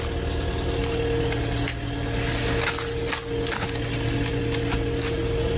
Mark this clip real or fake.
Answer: real